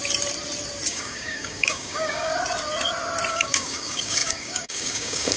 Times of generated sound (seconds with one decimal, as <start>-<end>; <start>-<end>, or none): 0.9-2.3; 3.3-5.4